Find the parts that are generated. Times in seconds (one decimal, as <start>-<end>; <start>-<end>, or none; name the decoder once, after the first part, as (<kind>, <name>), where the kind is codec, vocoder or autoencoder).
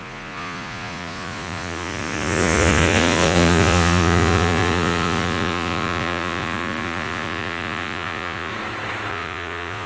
0.0-8.5 (vocoder, Vocos); 9.1-9.9